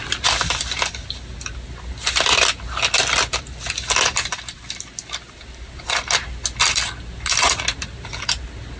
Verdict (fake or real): real